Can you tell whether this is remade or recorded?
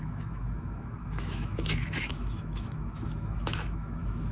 remade